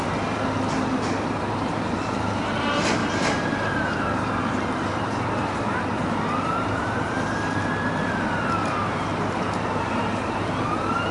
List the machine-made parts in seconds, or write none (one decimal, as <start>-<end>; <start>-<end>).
0.0-11.1